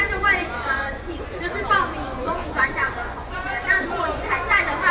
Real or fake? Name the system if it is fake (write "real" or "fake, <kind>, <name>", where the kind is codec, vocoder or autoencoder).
fake, vocoder, Vocos